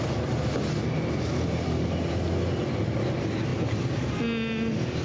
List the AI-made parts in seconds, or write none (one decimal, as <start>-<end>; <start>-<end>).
none